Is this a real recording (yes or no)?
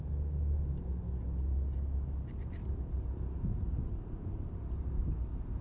yes